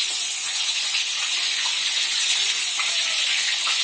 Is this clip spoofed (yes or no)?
yes